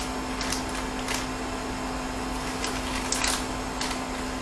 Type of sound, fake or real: real